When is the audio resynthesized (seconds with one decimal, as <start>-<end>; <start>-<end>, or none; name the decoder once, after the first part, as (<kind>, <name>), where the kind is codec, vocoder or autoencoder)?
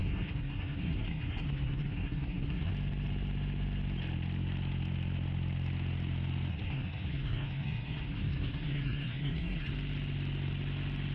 0.0-2.7 (codec, SNAC); 6.5-9.7